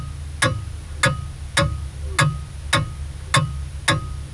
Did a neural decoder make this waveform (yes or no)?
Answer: no